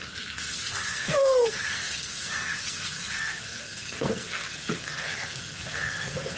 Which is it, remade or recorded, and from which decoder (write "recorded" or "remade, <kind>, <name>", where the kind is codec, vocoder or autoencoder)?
remade, codec, SNAC